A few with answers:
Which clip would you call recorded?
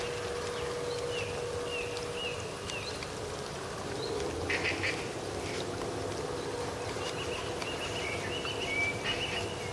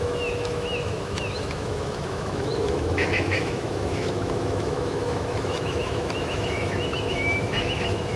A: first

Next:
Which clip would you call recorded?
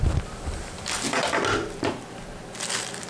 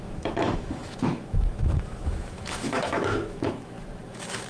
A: first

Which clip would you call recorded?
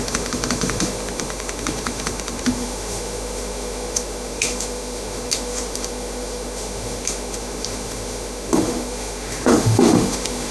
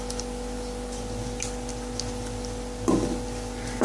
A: second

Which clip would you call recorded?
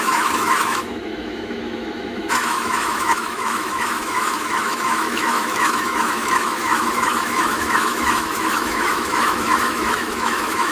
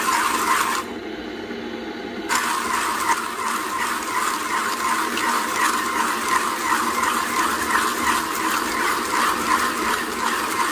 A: second